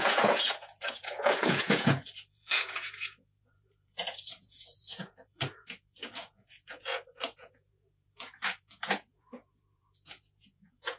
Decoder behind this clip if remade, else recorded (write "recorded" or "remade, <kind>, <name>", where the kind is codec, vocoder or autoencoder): remade, vocoder, Vocos